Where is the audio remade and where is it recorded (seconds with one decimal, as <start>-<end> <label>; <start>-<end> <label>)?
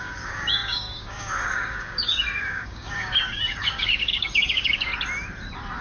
0.0-4.9 remade; 4.9-5.8 recorded